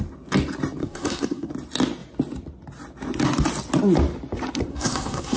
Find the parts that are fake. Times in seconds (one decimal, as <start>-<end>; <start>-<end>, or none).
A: 0.8-1.5; 4.7-5.4

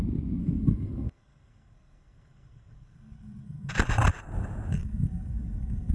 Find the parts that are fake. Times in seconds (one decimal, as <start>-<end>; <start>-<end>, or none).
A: 0.4-3.7; 4.7-5.9